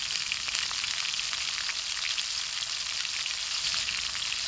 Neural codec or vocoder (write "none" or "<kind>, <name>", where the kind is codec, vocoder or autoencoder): none